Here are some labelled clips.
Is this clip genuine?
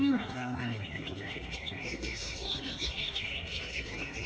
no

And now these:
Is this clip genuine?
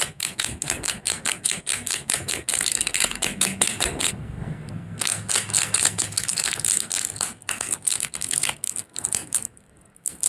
no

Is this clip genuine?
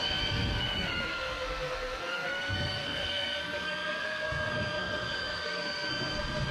no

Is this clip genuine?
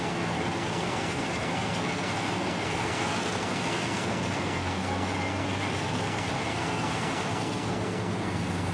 no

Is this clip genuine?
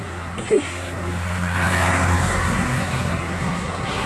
no